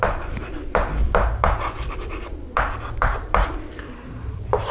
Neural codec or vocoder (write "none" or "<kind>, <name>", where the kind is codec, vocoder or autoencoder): vocoder, BigVGAN v2